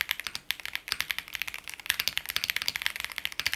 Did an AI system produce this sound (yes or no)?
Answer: no